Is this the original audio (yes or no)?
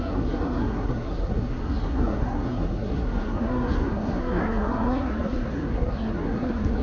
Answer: no